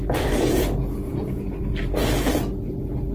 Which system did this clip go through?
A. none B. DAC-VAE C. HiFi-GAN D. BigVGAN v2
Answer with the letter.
A